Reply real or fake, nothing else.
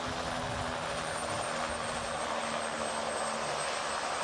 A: real